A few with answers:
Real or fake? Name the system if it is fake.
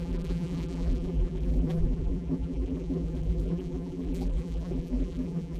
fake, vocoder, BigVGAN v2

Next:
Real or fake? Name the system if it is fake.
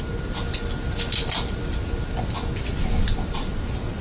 real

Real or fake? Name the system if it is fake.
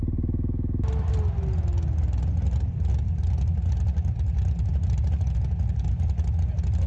real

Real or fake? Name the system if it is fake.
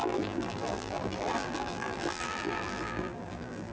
fake, vocoder, BigVGAN v2